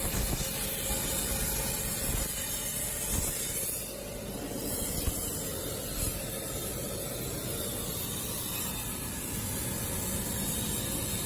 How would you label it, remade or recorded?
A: recorded